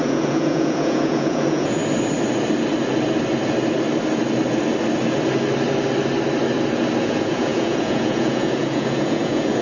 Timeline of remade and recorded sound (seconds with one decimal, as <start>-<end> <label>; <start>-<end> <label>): 0.0-1.8 remade; 1.8-7.0 recorded; 7.0-9.6 remade